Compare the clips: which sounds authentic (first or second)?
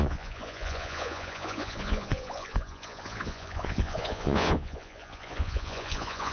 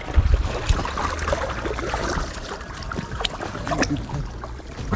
second